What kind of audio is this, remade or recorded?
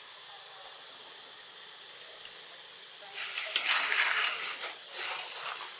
recorded